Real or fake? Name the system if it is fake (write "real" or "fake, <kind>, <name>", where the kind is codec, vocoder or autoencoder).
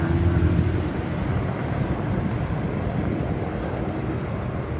real